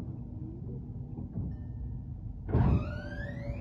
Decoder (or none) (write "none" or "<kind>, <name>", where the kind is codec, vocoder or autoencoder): none